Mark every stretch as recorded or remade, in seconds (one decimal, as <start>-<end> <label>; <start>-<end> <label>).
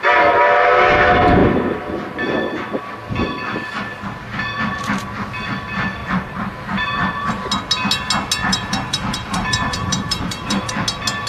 0.0-6.0 recorded; 6.0-7.3 remade; 7.3-8.4 recorded; 8.4-10.7 remade; 10.7-11.3 recorded